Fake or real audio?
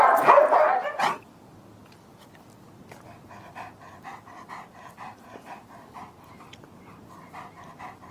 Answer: real